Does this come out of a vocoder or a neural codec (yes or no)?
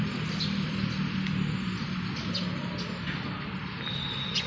no